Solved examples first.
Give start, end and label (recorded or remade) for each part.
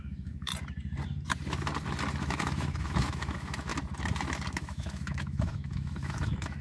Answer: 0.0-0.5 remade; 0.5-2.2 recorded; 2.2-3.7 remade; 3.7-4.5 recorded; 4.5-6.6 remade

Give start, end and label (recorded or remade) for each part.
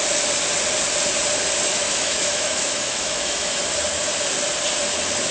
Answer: 0.0-1.7 recorded; 1.7-3.6 remade; 3.6-5.3 recorded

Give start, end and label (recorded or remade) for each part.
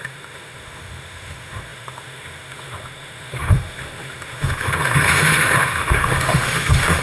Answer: 0.0-7.0 remade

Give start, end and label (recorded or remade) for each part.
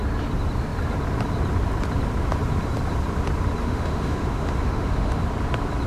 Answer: 0.0-3.6 recorded; 3.6-5.2 remade; 5.2-5.9 recorded